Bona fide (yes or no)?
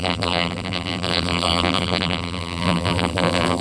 no